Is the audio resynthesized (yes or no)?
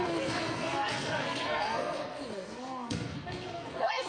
yes